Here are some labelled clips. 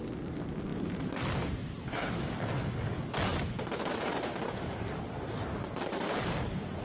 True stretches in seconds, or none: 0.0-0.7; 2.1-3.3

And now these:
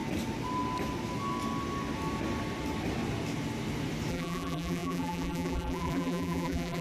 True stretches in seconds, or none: 0.0-4.1